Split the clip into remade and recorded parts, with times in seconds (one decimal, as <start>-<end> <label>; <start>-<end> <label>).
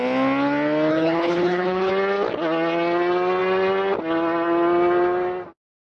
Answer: 0.0-0.9 recorded; 0.9-1.9 remade; 1.9-5.8 recorded